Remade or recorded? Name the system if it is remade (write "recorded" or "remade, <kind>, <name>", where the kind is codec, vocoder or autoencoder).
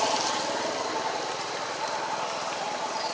recorded